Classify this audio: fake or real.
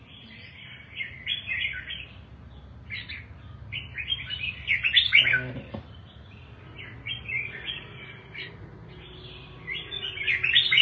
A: real